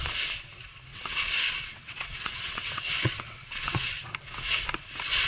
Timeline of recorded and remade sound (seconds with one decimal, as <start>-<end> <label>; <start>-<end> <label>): 0.0-0.9 recorded; 0.9-4.1 remade; 4.1-5.3 recorded